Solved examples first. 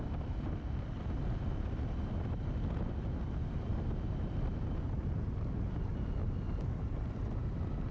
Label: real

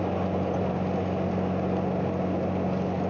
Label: real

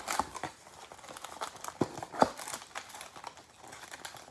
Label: real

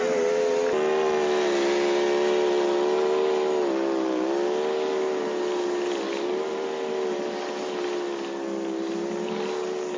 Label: real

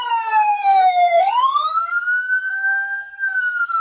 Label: fake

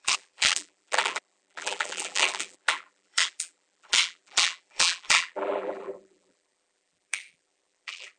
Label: fake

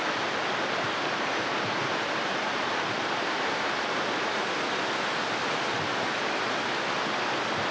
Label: real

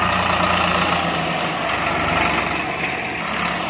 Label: real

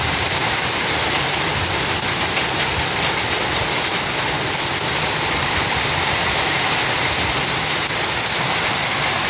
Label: real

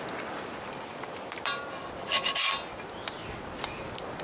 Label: real